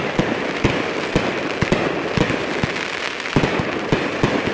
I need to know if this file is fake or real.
real